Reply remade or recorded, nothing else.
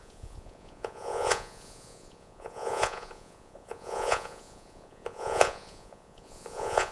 remade